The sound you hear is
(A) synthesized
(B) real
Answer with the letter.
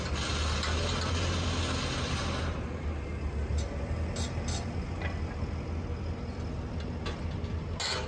B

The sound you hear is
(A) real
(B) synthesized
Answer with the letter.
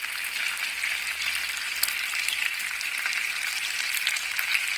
A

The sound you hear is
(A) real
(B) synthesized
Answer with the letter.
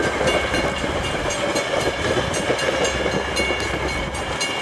A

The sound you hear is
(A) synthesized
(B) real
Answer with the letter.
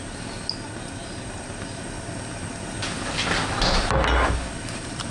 B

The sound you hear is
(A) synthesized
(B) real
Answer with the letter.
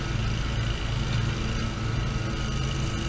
B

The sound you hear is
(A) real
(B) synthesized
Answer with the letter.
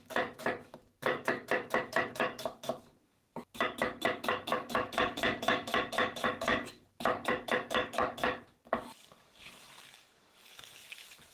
B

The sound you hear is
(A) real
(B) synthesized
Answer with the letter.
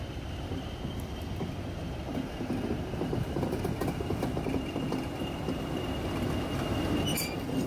A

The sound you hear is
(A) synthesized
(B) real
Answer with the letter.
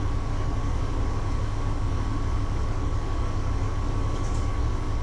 A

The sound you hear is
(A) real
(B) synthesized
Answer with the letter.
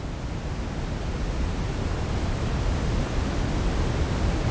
A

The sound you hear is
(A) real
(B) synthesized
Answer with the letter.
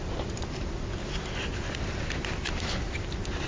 A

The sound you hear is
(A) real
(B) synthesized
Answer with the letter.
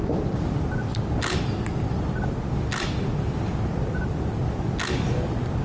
A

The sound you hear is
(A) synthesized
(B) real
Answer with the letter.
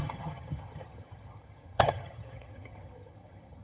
A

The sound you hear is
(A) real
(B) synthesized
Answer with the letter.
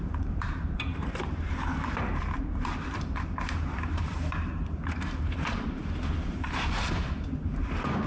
B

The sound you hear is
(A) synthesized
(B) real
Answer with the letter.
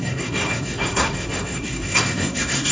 A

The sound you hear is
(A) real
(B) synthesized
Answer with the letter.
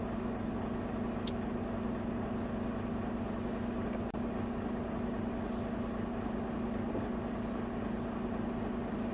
A